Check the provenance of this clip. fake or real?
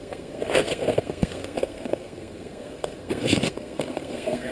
fake